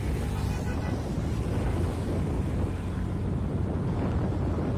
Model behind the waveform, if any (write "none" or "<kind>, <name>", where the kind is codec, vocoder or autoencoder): none